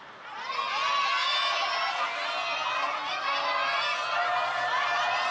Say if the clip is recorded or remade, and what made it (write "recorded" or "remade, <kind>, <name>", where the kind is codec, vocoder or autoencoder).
recorded